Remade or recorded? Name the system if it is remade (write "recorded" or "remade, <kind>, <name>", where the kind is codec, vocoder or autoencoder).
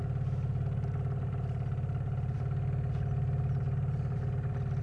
recorded